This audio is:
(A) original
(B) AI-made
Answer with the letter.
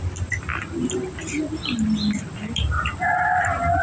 A